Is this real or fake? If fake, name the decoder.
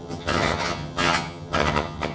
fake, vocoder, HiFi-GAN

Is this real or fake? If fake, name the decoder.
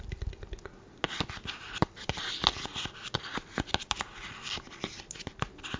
real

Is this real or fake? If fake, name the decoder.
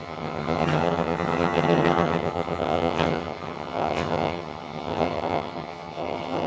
fake, vocoder, HiFi-GAN